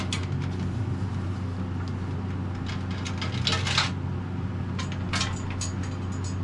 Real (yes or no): yes